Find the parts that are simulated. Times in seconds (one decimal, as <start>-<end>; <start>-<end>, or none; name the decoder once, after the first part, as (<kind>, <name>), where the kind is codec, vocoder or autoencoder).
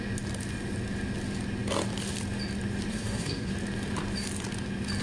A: 2.9-3.5 (codec, SNAC)